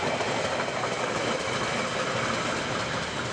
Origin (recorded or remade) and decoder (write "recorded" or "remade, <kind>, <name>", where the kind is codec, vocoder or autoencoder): recorded